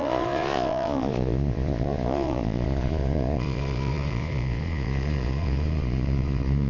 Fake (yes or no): yes